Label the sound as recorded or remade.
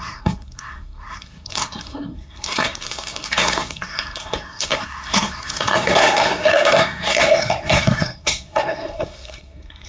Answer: remade